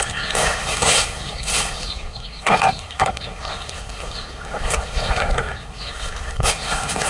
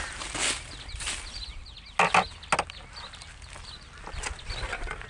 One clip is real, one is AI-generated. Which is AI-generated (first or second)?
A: first